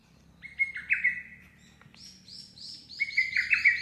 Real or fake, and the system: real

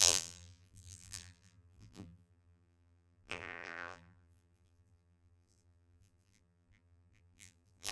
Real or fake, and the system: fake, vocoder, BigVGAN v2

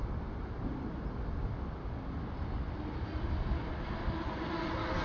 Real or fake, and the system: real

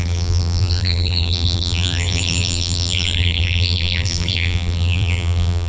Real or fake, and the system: fake, vocoder, BigVGAN v2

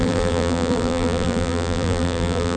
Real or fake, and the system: fake, vocoder, BigVGAN v2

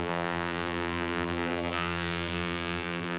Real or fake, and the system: fake, vocoder, BigVGAN v2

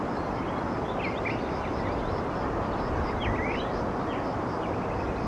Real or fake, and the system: real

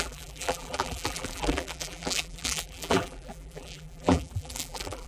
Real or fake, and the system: fake, vocoder, BigVGAN v2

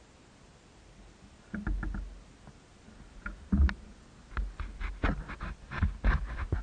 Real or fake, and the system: real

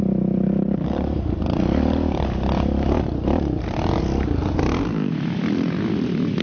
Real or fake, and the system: fake, vocoder, BigVGAN v2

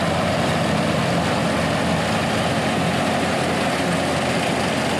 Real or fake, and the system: real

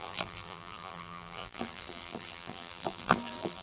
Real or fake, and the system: fake, vocoder, BigVGAN v2